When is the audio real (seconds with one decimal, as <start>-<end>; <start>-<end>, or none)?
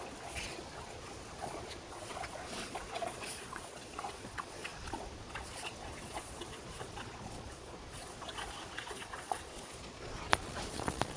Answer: none